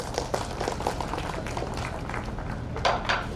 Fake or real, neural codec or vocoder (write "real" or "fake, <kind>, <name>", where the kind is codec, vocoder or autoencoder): real